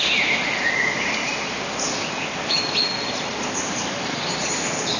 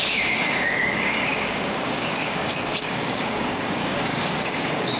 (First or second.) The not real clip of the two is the second